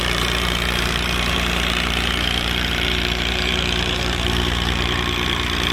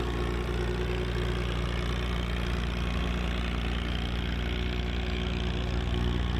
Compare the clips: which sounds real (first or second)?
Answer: second